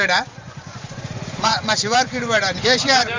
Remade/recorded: remade